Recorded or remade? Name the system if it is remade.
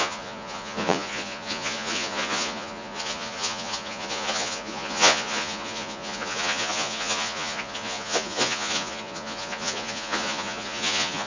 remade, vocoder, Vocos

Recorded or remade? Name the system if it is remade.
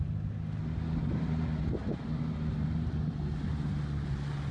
recorded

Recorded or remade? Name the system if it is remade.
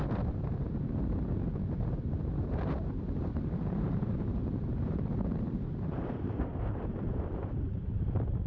remade, vocoder, BigVGAN v2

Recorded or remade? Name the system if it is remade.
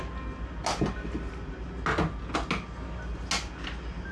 recorded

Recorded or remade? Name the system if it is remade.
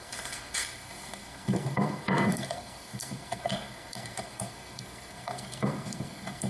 remade, codec, SNAC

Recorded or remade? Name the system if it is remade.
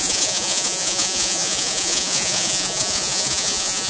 remade, vocoder, Vocos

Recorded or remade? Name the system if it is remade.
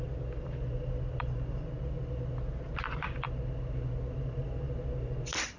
recorded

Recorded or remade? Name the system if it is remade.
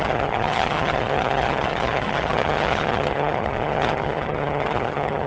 remade, vocoder, HiFi-GAN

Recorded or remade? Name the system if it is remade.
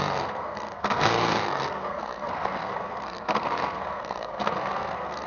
remade, codec, SNAC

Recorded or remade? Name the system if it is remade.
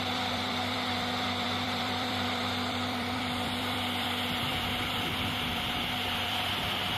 remade, vocoder, BigVGAN v2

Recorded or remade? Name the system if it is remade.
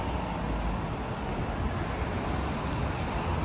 recorded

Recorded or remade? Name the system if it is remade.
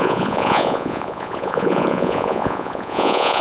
remade, vocoder, Vocos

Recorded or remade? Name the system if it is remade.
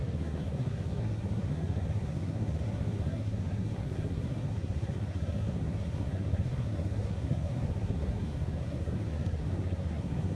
remade, codec, SNAC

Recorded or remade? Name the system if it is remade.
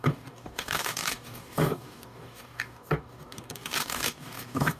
remade, codec, DAC